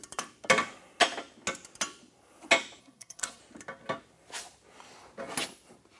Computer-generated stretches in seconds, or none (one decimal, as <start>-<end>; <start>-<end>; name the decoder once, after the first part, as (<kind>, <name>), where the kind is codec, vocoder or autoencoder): 2.8-3.4 (codec, SNAC)